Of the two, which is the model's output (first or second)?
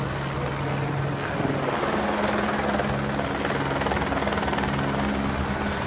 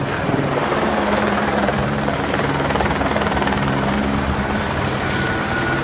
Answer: second